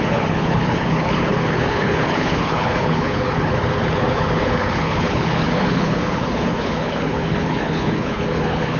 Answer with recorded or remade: remade